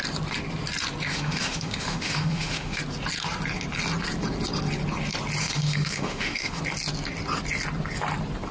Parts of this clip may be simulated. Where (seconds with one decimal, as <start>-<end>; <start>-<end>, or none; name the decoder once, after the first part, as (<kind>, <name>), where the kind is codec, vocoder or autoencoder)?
1.1-2.8 (autoencoder, DAC-VAE); 5.4-6.6